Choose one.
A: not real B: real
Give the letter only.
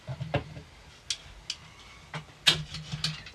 B